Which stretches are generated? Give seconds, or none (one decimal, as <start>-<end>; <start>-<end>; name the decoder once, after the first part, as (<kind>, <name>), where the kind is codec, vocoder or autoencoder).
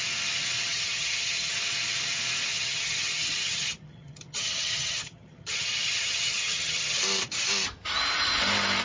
0.7-1.5 (vocoder, HiFi-GAN); 2.5-7.0